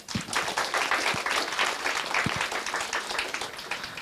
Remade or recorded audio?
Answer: recorded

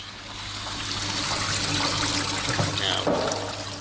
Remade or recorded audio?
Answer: recorded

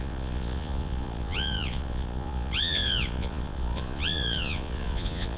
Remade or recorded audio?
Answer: remade